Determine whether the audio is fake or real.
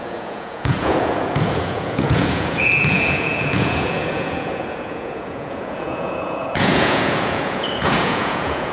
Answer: fake